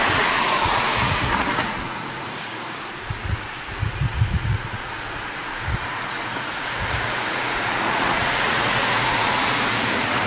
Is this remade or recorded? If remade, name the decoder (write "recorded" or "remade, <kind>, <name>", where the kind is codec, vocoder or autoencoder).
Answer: remade, vocoder, Vocos